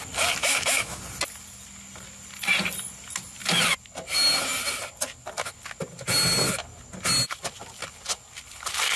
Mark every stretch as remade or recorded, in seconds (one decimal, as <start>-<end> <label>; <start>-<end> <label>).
0.0-0.4 recorded; 0.4-1.0 remade; 1.0-9.0 recorded